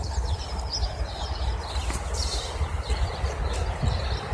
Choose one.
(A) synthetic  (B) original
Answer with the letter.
A